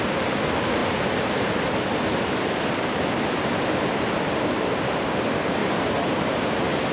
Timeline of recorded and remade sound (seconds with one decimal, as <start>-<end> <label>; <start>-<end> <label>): 0.0-5.6 recorded; 5.6-6.5 remade; 6.5-6.9 recorded